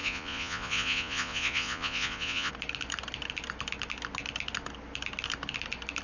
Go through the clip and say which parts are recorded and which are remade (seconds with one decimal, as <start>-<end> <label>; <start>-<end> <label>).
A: 0.0-2.5 remade; 2.5-6.0 recorded